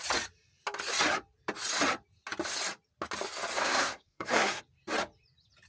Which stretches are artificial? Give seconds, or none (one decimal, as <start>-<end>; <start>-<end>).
3.6-4.6